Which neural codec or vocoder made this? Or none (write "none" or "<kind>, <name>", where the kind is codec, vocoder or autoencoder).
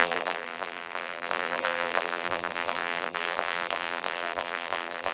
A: vocoder, BigVGAN v2